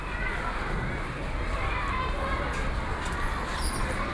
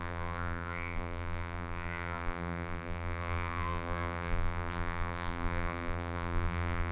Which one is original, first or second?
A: first